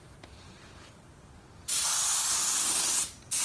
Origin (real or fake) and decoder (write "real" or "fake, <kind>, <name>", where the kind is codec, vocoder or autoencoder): real